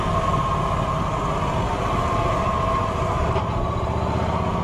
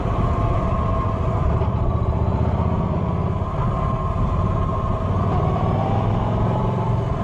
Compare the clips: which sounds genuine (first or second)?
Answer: first